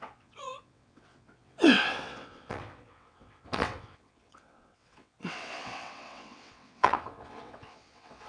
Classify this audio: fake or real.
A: fake